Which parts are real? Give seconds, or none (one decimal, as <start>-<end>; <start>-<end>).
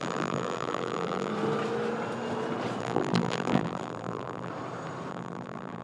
1.3-2.8; 4.5-5.1